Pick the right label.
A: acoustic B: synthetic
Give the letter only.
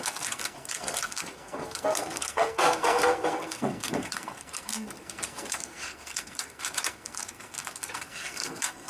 B